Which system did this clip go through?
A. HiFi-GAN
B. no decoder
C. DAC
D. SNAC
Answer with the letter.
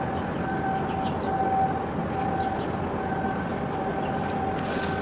B